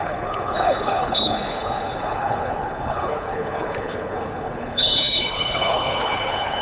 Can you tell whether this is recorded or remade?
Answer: remade